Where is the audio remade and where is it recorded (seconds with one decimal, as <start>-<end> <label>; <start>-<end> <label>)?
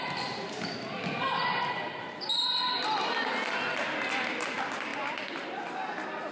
0.0-6.3 recorded